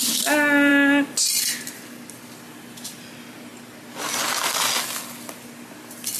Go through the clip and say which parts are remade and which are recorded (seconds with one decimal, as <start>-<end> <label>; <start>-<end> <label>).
0.0-6.2 recorded

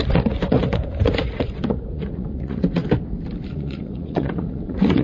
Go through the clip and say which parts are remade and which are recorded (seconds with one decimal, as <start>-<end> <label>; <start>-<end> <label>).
0.0-2.8 remade; 2.8-3.5 recorded; 3.5-5.0 remade

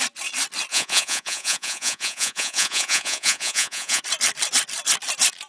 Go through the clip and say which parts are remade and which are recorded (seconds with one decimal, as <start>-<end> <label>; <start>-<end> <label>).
0.0-0.7 recorded; 0.7-4.0 remade; 4.0-5.5 recorded

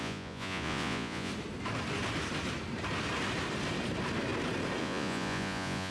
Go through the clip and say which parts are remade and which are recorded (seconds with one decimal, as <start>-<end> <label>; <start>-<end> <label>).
0.0-1.3 remade; 1.3-4.8 recorded; 4.8-5.9 remade